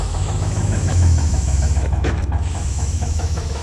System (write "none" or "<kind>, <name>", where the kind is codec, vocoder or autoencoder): autoencoder, DAC-VAE